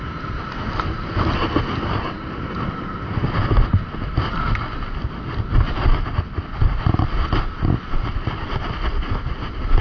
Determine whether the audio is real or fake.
real